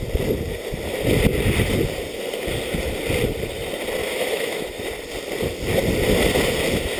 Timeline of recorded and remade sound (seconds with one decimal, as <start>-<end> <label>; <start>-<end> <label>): 0.0-4.0 recorded; 4.0-4.9 remade; 4.9-7.0 recorded